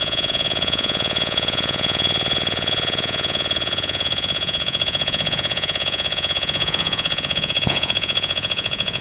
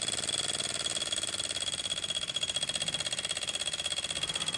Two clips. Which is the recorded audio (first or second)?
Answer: second